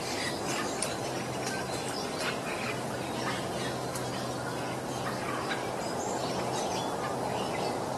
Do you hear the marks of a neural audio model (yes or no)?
no